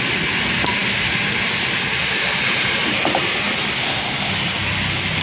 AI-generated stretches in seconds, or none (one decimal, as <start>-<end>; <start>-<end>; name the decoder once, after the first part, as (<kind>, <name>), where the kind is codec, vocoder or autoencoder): 3.8-4.3 (codec, ZipCodec)